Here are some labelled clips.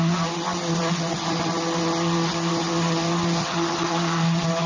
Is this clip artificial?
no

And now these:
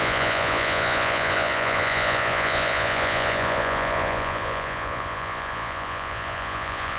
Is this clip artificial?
yes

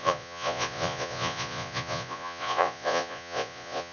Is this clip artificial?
yes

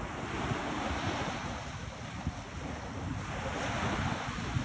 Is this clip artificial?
no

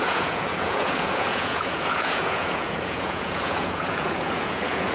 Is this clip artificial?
yes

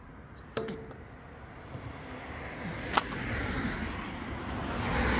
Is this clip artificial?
no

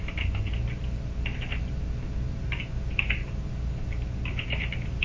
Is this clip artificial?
no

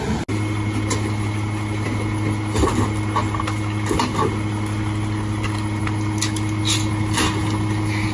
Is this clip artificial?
no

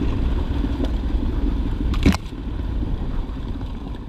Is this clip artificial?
no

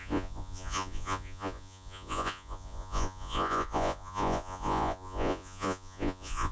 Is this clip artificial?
yes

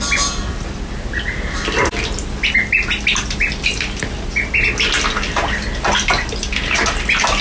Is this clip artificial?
no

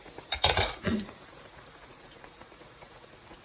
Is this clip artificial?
yes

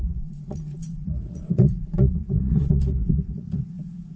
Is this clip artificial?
yes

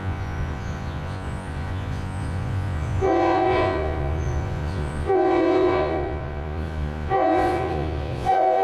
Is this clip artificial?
yes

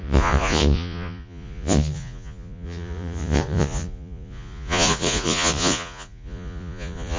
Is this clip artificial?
yes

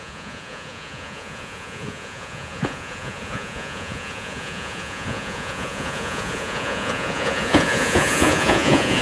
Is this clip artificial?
yes